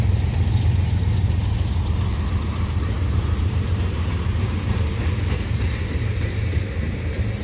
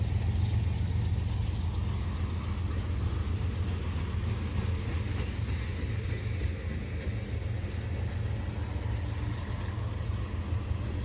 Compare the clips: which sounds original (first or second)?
second